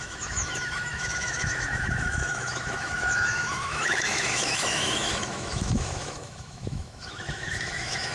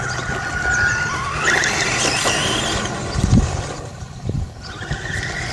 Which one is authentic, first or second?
second